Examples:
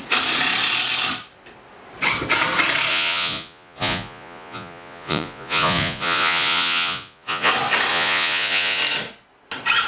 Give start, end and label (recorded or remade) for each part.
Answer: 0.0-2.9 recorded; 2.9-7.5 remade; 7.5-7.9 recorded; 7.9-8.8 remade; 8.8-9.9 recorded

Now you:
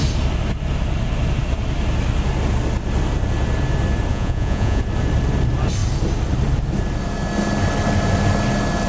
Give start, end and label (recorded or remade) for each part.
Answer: 0.0-4.1 recorded; 4.1-4.8 remade; 4.8-8.9 recorded

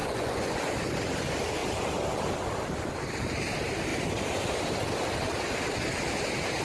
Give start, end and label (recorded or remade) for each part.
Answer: 0.0-0.7 remade; 0.7-6.6 recorded

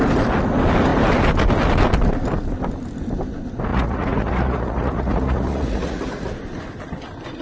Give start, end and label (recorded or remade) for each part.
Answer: 0.0-3.7 recorded; 3.7-6.3 remade; 6.3-7.4 recorded

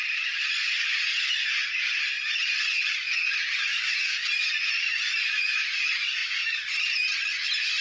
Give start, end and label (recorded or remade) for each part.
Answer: 0.0-3.7 remade; 3.7-5.4 recorded; 5.4-6.2 remade; 6.2-7.8 recorded

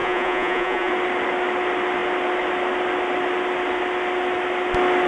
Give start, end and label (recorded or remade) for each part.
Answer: 0.0-0.9 remade; 0.9-5.1 recorded